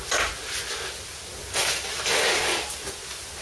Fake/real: real